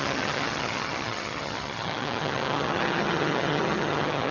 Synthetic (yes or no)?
yes